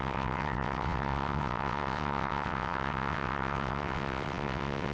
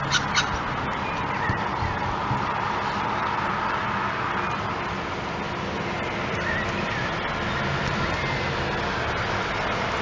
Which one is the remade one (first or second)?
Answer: first